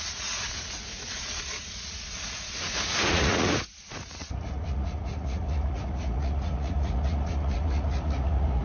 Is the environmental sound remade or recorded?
remade